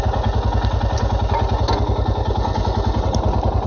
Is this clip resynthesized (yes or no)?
no